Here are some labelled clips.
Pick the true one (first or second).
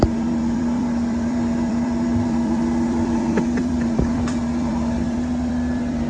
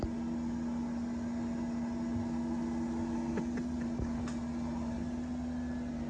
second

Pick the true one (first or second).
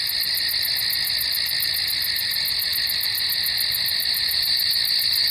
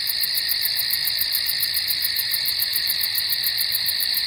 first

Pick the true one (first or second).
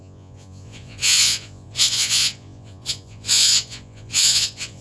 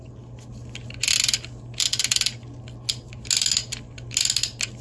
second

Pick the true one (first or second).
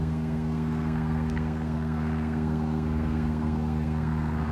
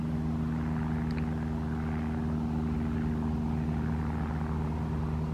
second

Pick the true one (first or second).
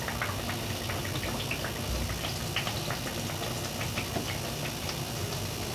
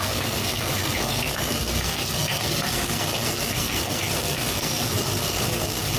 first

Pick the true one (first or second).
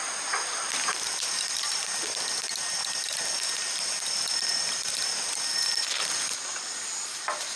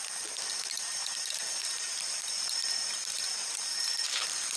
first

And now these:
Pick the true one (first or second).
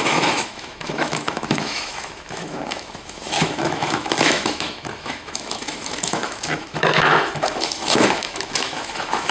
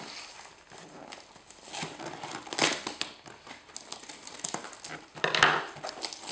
second